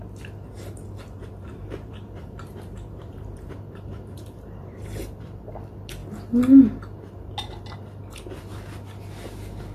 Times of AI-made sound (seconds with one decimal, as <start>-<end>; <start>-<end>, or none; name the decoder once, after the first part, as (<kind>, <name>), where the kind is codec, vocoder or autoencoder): 1.2-5.5 (vocoder, BigVGAN v2)